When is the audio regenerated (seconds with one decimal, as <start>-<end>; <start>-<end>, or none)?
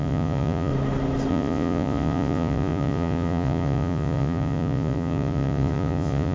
0.0-0.7; 1.3-6.3